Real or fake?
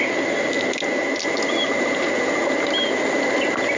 real